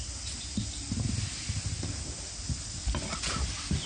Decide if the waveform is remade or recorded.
recorded